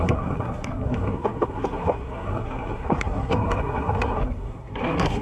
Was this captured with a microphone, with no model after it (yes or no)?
no